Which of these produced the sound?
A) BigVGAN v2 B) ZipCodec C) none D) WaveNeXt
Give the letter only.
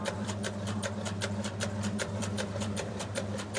A